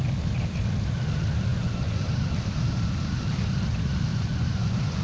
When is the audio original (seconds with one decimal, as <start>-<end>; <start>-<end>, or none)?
0.0-1.5; 2.0-4.1